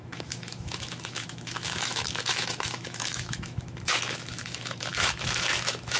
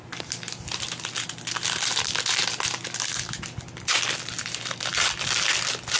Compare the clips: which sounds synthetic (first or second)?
first